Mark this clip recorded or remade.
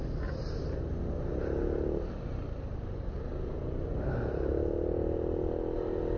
recorded